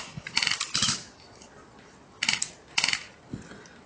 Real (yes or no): yes